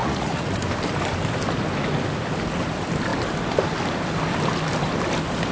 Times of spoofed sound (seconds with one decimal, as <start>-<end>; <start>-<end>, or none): 0.0-0.5